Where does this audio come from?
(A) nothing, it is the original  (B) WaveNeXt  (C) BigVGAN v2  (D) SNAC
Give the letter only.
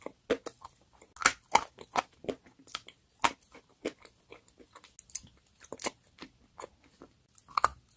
A